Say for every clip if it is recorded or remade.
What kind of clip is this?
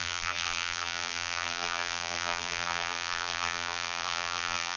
remade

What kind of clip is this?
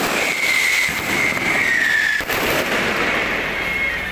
recorded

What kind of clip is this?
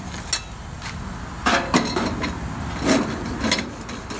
recorded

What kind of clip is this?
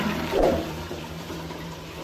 remade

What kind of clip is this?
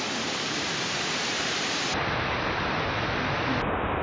remade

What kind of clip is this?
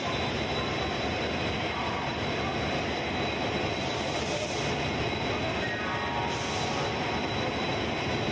recorded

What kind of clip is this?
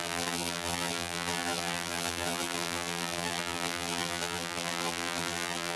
remade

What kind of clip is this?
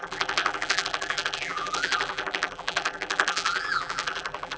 remade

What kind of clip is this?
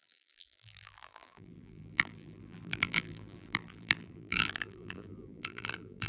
remade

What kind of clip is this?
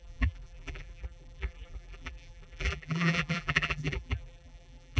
remade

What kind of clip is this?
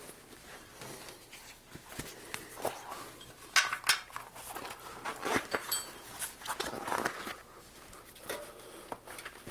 recorded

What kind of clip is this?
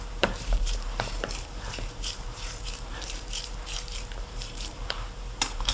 remade